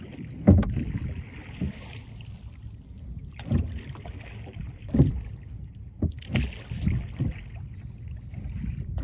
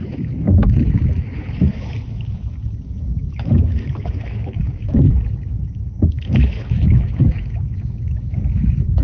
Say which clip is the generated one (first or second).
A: second